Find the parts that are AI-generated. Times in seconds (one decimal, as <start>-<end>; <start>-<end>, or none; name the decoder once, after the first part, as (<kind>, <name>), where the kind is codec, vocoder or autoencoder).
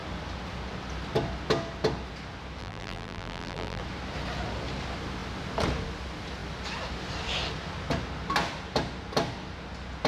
2.6-3.8 (vocoder, BigVGAN v2)